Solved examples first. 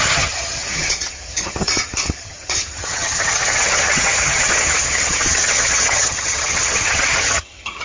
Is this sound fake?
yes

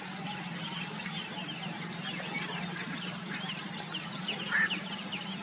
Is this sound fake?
no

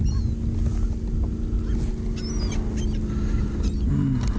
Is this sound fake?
no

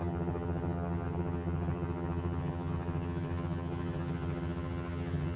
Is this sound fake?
yes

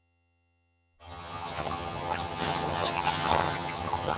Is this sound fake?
yes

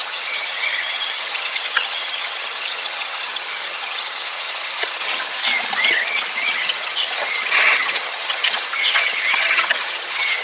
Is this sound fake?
yes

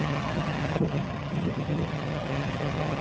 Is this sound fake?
yes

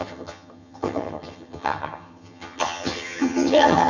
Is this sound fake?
yes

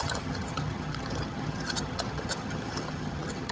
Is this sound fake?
yes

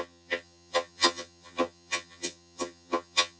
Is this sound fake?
yes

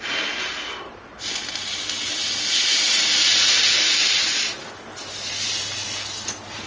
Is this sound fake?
no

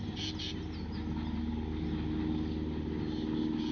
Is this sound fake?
no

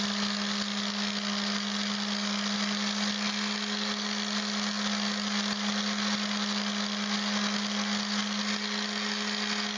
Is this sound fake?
no